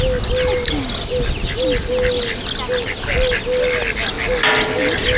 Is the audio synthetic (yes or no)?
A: no